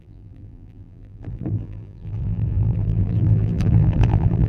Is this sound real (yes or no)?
no